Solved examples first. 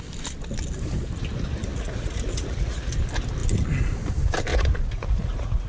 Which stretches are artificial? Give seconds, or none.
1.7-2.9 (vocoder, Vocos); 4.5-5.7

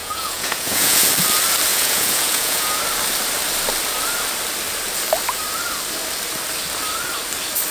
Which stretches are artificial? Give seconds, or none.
0.0-1.1 (vocoder, Vocos); 1.7-2.8

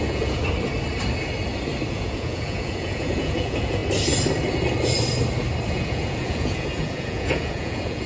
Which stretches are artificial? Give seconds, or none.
0.0-0.4 (vocoder, Vocos); 1.9-3.8; 5.7-8.1

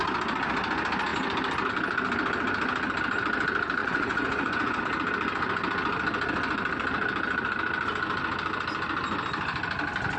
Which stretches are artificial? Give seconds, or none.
3.8-4.8 (vocoder, Vocos)

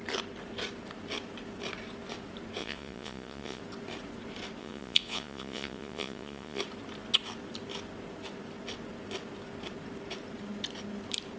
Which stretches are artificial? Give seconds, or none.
2.6-3.6 (vocoder, Vocos); 4.6-6.6

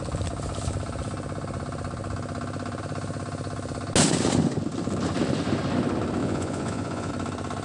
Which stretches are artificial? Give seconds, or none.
6.2-7.1 (vocoder, Vocos)

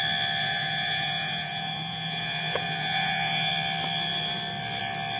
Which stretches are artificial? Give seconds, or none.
0.4-3.5 (vocoder, Vocos)

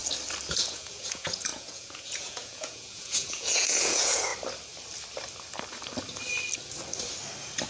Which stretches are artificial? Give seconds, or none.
0.5-4.3 (vocoder, Vocos)